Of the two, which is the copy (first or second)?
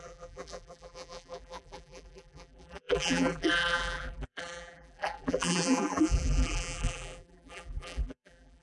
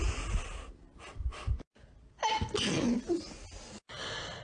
first